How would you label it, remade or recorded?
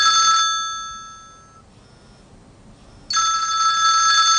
recorded